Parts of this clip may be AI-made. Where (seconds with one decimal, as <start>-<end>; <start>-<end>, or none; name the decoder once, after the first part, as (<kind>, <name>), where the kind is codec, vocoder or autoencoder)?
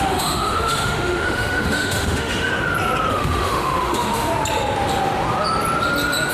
0.0-2.5 (autoencoder, DAC-VAE); 3.1-4.3